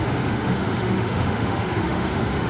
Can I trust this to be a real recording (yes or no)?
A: no